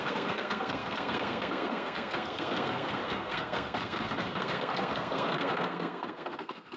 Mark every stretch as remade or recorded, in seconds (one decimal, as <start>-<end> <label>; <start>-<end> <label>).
0.0-6.8 remade